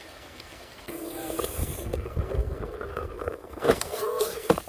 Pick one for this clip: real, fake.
fake